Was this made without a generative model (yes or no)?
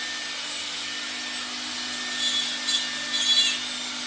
yes